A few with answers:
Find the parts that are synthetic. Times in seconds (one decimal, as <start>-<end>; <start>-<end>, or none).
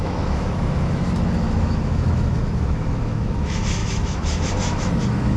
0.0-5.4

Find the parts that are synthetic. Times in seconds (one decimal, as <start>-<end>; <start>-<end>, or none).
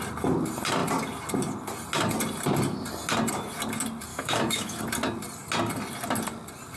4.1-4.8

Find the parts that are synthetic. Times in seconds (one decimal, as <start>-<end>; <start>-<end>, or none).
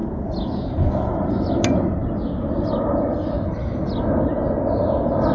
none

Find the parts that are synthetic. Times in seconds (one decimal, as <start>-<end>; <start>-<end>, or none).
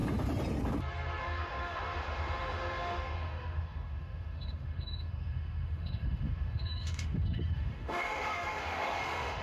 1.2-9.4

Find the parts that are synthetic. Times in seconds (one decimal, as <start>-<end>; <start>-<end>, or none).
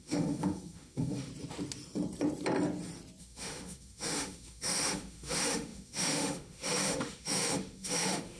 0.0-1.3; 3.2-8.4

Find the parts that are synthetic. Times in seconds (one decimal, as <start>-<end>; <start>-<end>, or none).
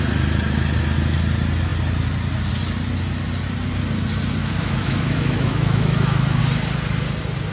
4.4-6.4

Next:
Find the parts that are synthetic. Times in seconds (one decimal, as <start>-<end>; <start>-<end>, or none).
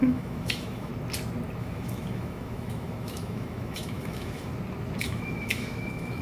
0.0-0.9; 1.6-4.5; 5.0-6.2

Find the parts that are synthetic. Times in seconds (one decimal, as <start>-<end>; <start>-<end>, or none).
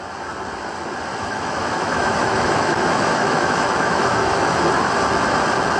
1.1-4.6